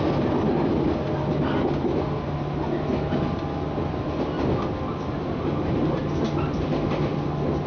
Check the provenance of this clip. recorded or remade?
recorded